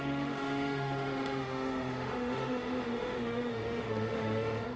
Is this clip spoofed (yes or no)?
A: yes